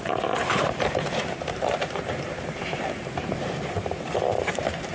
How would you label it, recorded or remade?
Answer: remade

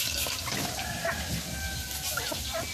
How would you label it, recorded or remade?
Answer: recorded